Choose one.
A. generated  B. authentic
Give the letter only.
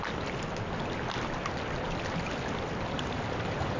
B